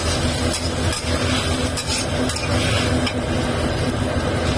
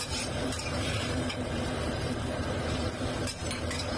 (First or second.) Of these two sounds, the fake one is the second